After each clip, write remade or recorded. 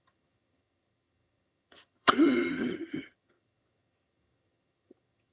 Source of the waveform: remade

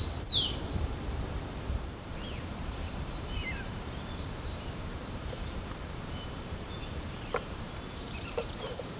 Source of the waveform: remade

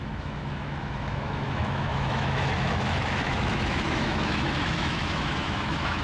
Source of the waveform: remade